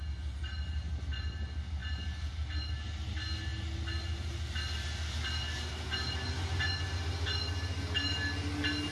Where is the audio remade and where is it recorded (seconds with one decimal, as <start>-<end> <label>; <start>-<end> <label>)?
0.0-8.9 recorded

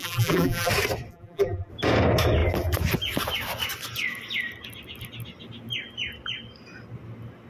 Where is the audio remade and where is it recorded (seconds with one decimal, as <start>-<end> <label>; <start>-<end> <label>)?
0.0-0.7 remade; 0.7-1.1 recorded; 1.1-1.7 remade; 1.7-7.5 recorded

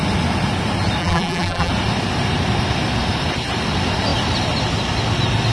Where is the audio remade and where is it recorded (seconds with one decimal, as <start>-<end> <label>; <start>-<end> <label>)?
0.0-1.0 recorded; 1.0-1.7 remade; 1.7-5.5 recorded

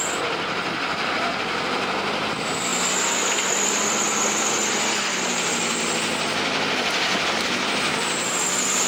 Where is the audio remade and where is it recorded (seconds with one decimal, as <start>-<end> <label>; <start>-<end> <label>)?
0.0-8.9 recorded

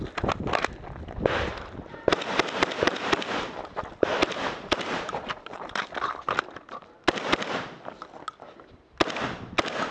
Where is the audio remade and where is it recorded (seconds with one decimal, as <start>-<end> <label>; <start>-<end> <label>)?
0.0-1.5 recorded; 1.5-3.5 remade; 3.5-4.2 recorded; 4.2-5.9 remade; 5.9-9.9 recorded